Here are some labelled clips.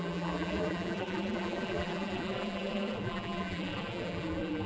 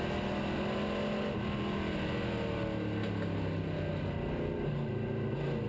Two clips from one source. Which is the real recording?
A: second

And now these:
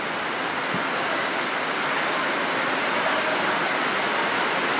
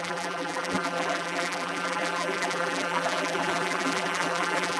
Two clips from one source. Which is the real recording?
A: first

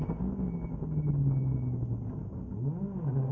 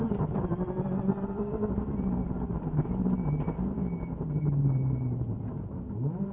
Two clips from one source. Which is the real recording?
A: first